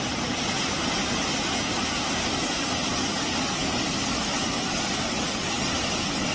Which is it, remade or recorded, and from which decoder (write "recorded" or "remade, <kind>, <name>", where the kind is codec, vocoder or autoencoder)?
recorded